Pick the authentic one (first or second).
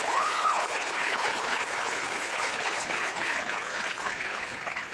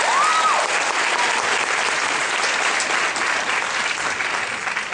second